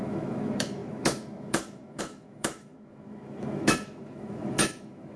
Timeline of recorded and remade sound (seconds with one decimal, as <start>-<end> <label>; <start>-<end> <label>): 0.0-5.2 remade